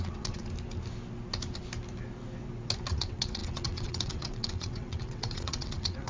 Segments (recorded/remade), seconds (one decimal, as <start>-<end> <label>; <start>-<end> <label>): 0.0-0.4 remade; 0.4-2.9 recorded; 2.9-6.1 remade